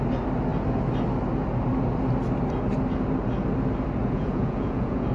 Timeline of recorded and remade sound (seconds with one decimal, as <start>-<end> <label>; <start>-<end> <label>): 0.0-4.0 recorded; 4.0-5.1 remade